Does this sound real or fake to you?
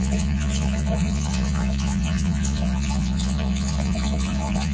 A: fake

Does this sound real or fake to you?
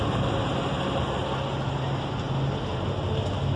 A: real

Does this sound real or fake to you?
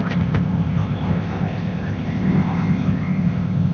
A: fake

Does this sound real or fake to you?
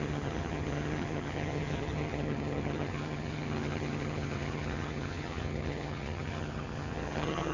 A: fake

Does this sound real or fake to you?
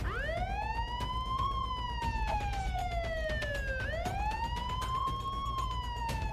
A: real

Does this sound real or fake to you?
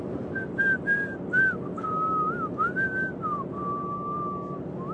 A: real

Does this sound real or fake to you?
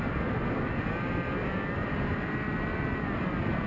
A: real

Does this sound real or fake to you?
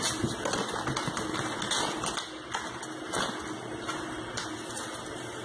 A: real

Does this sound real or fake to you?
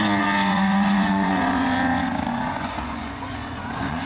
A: fake